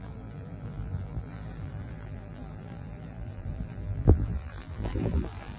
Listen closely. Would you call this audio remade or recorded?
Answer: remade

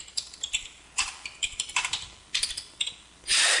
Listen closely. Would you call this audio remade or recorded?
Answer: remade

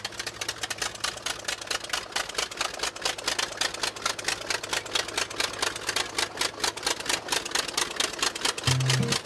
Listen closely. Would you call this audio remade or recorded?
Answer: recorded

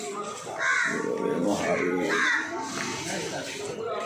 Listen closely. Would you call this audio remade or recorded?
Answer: recorded